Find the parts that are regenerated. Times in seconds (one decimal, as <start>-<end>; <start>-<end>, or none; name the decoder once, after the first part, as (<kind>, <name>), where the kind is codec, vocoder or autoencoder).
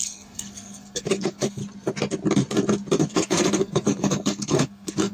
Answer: 0.0-1.6 (codec, SNAC); 3.1-5.1